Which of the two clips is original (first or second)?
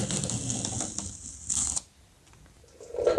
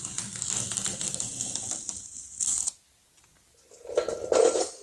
first